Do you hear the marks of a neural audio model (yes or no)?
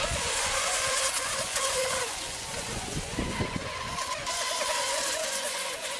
yes